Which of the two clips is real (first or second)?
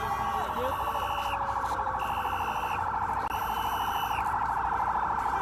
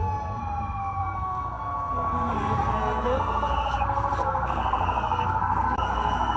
first